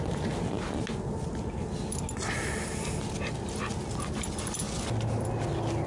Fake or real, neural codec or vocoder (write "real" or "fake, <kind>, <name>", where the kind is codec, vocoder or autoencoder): real